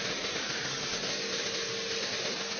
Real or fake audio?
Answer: real